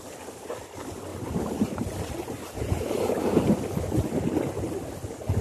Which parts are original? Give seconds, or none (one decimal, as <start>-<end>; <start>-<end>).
0.0-1.1; 3.6-5.4